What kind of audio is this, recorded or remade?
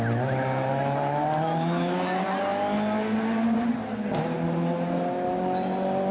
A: recorded